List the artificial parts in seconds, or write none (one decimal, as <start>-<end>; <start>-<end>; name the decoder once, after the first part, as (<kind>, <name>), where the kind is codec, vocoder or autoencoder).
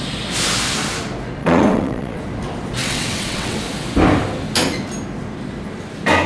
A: 1.4-2.2 (vocoder, WaveNeXt); 2.8-3.6